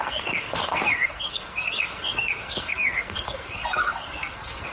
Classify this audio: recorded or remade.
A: remade